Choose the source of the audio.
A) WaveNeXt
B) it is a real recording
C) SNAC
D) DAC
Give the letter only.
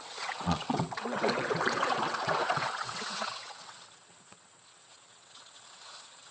A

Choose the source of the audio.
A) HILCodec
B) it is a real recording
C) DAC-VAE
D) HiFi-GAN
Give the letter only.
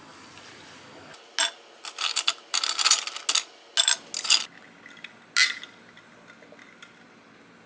B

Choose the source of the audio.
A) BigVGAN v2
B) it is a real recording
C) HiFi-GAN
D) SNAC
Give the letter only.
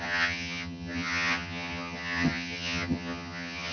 C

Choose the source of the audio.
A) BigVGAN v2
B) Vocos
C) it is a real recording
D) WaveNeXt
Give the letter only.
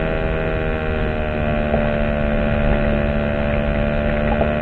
C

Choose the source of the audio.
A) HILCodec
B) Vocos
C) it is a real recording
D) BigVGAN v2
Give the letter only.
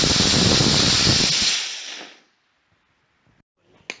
C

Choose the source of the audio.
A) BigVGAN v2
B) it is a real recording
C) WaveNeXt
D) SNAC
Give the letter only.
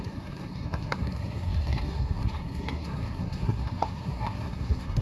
D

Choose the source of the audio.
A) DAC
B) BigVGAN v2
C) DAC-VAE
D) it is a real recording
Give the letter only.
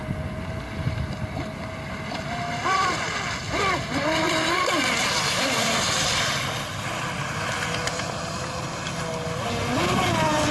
D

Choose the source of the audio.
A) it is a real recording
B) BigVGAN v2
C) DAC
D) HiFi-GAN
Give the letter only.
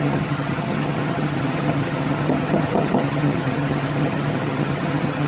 D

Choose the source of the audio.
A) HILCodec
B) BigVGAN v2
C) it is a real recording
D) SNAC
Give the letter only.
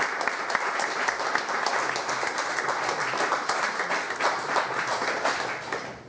C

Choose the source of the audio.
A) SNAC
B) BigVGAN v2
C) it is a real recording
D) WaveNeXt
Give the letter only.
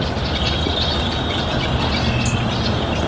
C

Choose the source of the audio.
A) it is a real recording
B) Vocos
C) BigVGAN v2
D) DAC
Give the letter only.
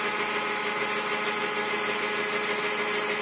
A